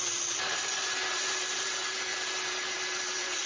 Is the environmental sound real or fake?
real